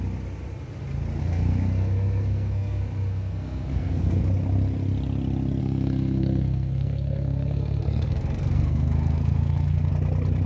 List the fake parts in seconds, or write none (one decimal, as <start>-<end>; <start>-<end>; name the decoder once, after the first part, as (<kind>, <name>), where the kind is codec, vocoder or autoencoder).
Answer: 1.2-4.2 (codec, SNAC); 5.6-9.9